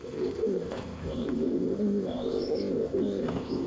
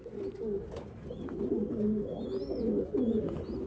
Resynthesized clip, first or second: first